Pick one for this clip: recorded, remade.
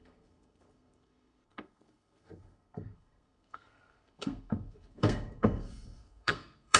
remade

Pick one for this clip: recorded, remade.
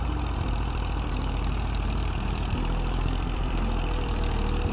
remade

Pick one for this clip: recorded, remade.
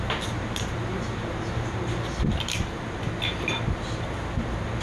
recorded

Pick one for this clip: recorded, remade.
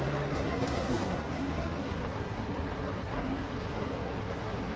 remade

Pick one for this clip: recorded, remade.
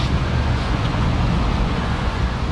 remade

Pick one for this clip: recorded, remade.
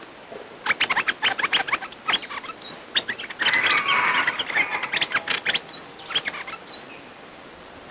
recorded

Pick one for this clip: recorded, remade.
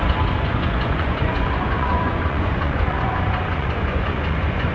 remade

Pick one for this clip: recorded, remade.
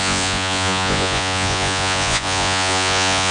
remade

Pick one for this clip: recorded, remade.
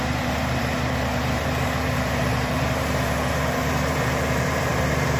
remade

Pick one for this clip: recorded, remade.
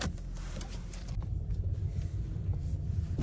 remade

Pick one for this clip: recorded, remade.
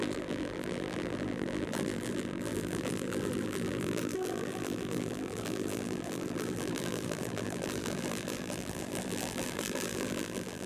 remade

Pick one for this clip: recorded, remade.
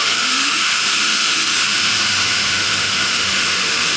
remade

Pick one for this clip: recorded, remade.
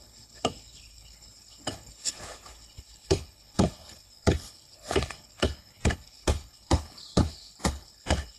remade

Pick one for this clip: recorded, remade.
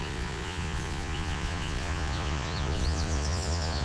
remade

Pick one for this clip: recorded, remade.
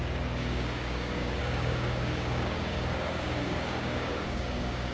remade